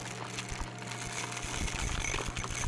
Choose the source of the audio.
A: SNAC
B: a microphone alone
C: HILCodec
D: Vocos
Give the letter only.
B